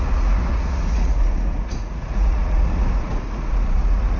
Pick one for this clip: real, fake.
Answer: fake